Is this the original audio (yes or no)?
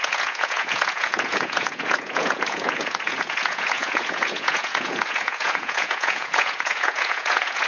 no